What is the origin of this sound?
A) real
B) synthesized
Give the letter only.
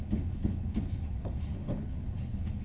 B